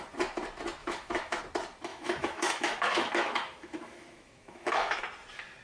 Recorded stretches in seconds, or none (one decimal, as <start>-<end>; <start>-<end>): 0.0-0.8; 1.4-1.9; 5.0-5.6